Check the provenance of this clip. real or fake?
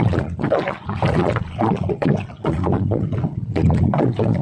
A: fake